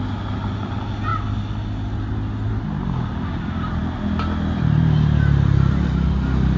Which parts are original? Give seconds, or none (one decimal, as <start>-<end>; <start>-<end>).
0.0-6.6